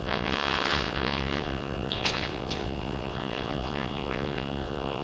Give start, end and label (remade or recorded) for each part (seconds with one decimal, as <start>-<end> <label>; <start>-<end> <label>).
0.0-5.0 remade